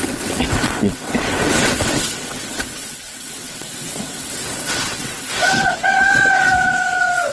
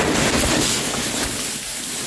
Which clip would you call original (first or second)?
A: second